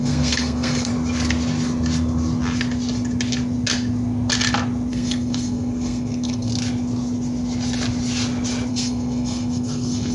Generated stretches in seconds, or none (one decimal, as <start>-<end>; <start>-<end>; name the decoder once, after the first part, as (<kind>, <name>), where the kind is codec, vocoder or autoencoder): 0.0-0.9 (codec, SNAC); 4.9-6.5; 8.7-10.1